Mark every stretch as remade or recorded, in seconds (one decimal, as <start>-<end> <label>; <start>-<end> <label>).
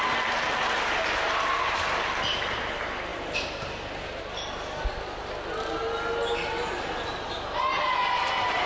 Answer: 0.0-3.1 recorded; 3.1-4.2 remade; 4.2-8.7 recorded